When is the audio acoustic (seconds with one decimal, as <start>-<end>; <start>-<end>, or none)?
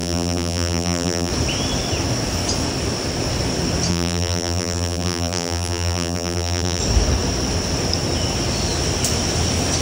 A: 1.3-3.9; 6.8-9.8